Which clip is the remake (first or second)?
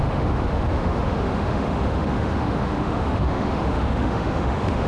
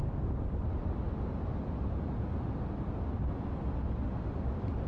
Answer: first